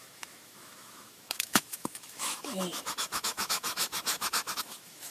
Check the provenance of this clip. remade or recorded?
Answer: remade